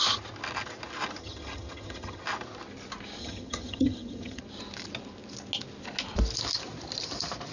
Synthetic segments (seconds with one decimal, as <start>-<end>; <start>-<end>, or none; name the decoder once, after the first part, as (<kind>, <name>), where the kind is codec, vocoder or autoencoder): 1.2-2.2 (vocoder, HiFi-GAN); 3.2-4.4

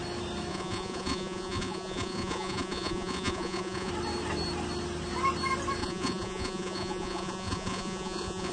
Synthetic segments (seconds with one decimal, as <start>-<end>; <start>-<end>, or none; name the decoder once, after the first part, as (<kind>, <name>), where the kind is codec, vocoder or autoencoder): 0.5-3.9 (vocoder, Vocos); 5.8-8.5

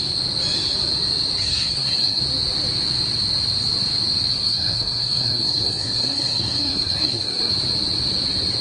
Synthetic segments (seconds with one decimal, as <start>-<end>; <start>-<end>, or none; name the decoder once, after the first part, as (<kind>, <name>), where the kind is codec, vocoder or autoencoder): 1.4-2.2 (codec, SNAC); 4.3-7.5